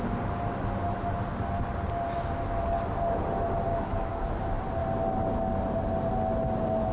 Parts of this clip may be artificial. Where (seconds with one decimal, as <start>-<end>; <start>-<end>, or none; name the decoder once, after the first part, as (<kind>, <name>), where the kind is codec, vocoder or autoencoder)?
3.7-4.3 (codec, DAC)